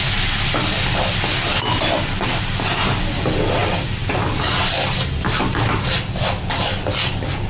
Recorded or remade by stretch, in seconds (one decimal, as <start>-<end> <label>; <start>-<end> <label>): 0.0-7.5 recorded

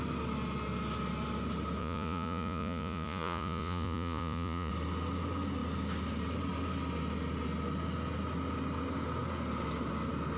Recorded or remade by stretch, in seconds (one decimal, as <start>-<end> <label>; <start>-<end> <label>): 0.0-1.8 recorded; 1.8-4.7 remade; 4.7-10.4 recorded

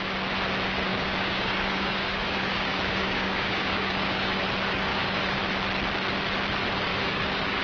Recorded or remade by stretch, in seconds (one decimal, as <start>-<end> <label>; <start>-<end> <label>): 0.0-0.9 recorded; 0.9-4.3 remade; 4.3-4.9 recorded; 4.9-5.4 remade; 5.4-6.9 recorded; 6.9-7.6 remade

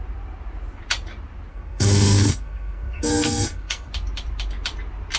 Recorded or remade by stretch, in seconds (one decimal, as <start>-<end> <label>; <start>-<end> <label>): 0.0-1.5 recorded; 1.5-3.9 remade; 3.9-5.2 recorded

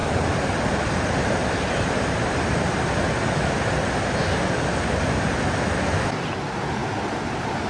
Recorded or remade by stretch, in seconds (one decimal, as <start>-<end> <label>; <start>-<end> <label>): 0.0-2.9 remade; 2.9-7.7 recorded

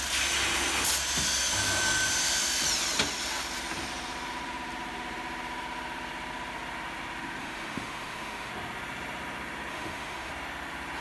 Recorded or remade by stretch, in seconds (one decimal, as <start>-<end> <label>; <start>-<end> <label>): 0.0-7.4 recorded; 7.4-8.5 remade; 8.5-9.7 recorded; 9.7-10.3 remade; 10.3-11.0 recorded